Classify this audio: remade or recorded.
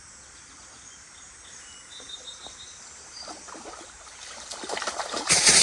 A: remade